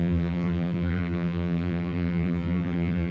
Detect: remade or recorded remade